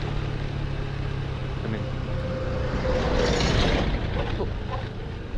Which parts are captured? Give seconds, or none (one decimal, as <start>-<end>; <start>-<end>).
0.0-5.4